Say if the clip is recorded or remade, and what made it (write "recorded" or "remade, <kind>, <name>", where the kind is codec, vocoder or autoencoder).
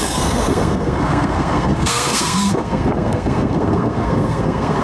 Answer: remade, codec, SNAC